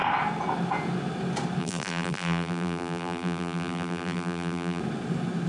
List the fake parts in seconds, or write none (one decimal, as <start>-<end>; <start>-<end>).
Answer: 1.6-4.8